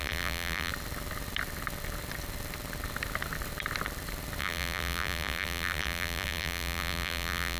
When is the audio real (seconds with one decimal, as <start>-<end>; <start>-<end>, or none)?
0.7-4.4